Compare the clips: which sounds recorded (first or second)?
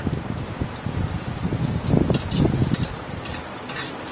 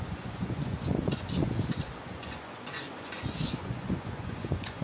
first